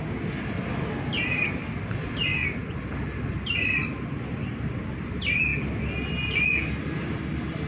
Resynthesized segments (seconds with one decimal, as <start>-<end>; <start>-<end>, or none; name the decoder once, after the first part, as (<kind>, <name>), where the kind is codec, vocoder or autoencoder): none